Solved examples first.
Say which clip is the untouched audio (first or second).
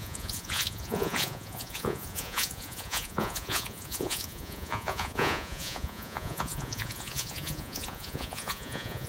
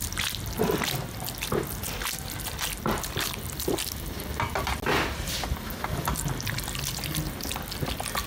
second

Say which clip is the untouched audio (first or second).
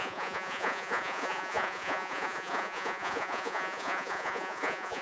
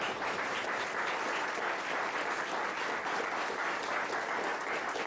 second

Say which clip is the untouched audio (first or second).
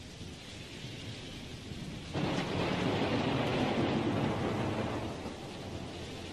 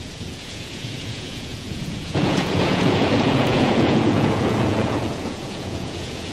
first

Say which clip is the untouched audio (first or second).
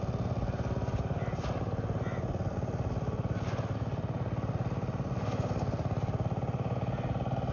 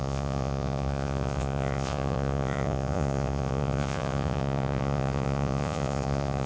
first